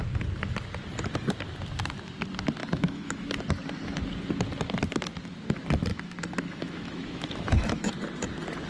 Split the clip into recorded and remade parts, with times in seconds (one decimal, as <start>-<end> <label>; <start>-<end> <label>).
0.0-2.6 recorded; 2.6-3.3 remade; 3.3-5.9 recorded; 5.9-7.9 remade; 7.9-8.7 recorded